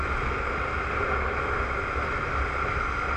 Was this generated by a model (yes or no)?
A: no